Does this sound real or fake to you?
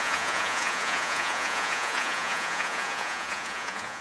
fake